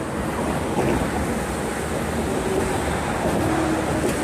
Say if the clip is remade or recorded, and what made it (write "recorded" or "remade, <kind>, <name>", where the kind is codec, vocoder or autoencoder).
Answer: recorded